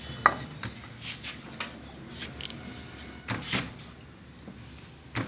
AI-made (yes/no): no